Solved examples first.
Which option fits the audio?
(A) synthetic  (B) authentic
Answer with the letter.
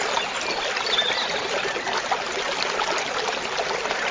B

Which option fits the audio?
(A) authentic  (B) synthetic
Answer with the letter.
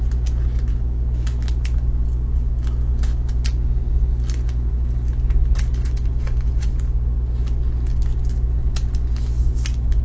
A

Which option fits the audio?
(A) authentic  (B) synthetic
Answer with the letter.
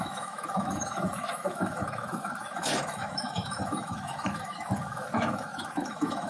B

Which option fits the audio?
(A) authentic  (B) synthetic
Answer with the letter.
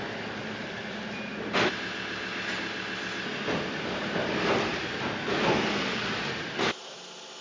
A